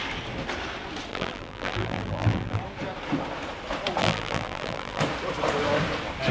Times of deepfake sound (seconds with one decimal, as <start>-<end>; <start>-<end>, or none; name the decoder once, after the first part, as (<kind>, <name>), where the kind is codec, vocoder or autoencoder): 1.1-2.6 (vocoder, BigVGAN v2); 4.0-5.0